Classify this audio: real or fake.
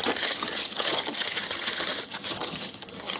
fake